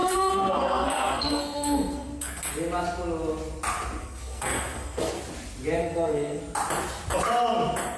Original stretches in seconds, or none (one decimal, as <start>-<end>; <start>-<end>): 2.5-4.0; 5.2-5.8; 6.4-8.0